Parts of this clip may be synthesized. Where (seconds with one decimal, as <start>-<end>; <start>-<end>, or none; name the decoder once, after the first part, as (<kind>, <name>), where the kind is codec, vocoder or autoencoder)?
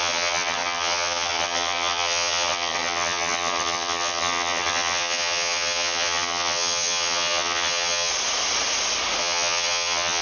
0.0-8.1 (vocoder, HiFi-GAN); 9.2-10.2